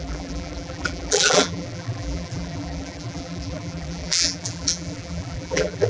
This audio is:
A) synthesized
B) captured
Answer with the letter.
A